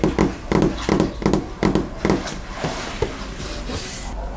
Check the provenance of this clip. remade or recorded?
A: recorded